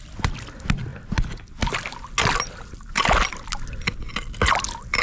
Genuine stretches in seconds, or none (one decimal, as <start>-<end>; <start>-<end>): 0.0-5.0